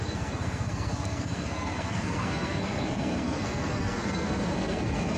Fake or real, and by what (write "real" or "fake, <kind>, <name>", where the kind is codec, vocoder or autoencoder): fake, codec, SNAC